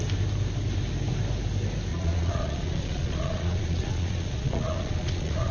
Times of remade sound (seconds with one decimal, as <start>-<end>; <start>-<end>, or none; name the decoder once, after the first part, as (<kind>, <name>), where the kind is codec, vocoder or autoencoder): 1.9-5.5 (vocoder, Vocos)